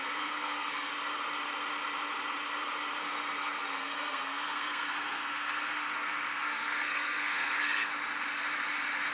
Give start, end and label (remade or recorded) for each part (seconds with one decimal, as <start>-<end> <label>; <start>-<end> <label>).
0.0-0.9 remade; 0.9-3.0 recorded; 3.0-7.9 remade; 7.9-9.1 recorded